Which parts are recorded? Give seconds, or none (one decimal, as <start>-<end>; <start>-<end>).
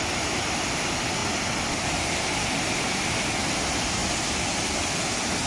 0.0-5.5